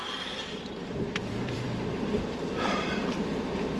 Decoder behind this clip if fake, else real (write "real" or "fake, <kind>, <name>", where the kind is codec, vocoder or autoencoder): fake, vocoder, BigVGAN v2